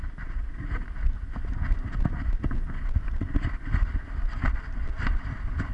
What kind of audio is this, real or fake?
real